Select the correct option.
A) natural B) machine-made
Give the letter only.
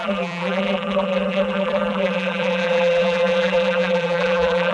B